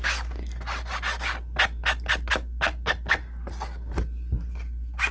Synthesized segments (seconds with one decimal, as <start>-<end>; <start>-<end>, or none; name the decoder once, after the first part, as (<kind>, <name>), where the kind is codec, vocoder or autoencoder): none

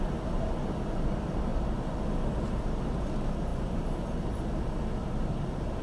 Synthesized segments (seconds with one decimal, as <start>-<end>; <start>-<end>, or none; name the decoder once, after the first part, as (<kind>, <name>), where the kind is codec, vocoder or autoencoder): 3.5-4.6 (vocoder, BigVGAN v2)